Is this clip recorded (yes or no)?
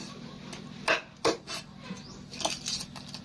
yes